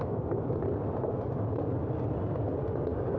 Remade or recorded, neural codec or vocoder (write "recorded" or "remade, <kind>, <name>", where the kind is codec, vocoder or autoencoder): recorded